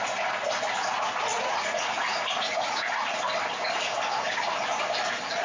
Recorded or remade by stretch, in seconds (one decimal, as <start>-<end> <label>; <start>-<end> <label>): 0.0-1.3 recorded; 1.3-3.2 remade; 3.2-5.4 recorded